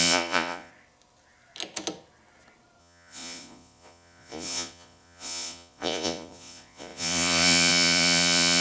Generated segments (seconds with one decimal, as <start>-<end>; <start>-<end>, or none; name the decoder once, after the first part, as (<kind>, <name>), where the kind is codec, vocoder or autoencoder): 0.0-0.7 (vocoder, Vocos); 2.8-8.6